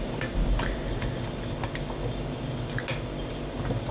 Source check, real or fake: real